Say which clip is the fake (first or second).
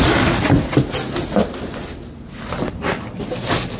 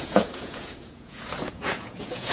second